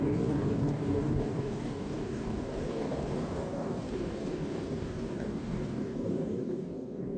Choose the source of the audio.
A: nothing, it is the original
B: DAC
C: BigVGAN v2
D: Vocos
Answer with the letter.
B